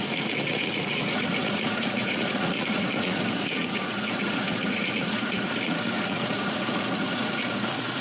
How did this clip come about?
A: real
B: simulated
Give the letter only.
B